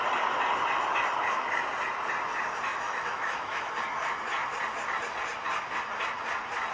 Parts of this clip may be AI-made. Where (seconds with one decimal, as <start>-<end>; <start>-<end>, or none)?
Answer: 2.7-3.7